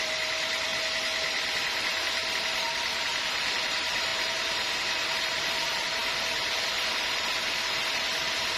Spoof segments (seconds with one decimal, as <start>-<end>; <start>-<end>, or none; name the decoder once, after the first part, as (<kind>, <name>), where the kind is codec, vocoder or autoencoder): 0.0-0.7 (vocoder, BigVGAN v2); 2.3-4.1; 5.2-6.0; 7.8-8.6